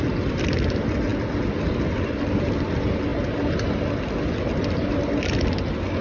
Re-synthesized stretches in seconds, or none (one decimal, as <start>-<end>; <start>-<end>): none